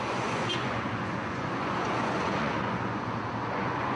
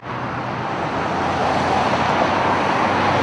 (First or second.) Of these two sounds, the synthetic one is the first